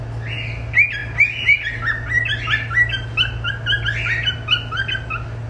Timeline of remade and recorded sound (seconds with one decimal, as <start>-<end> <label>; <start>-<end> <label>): 0.0-5.5 recorded